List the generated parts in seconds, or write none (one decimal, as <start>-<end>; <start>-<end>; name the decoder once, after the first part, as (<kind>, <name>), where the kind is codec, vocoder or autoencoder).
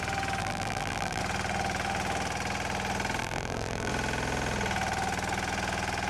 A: 0.4-1.2 (vocoder, BigVGAN v2); 3.2-3.9